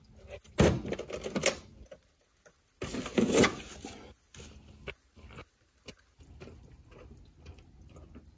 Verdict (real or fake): real